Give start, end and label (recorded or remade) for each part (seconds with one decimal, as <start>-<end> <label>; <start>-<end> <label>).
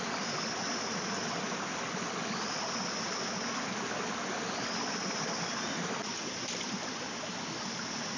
0.0-8.2 recorded